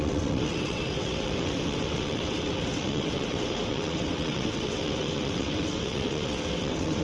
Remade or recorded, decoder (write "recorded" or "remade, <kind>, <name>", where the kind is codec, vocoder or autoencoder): remade, vocoder, WaveNeXt